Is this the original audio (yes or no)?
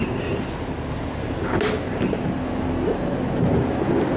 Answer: yes